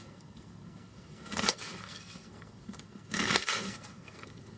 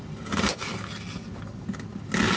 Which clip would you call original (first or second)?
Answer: second